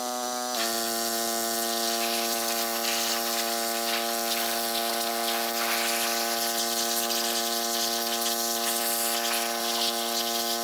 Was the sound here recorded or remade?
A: recorded